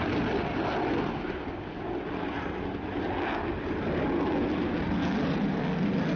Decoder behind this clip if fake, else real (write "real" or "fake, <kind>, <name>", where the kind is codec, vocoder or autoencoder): real